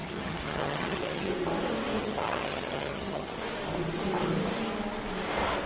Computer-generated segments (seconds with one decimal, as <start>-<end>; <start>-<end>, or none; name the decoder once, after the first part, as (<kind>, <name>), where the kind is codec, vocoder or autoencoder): 0.0-1.3 (vocoder, HiFi-GAN); 2.0-3.4